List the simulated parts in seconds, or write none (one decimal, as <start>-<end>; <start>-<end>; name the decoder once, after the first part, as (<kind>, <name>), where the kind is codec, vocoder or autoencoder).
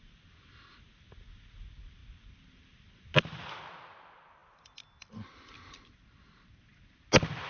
none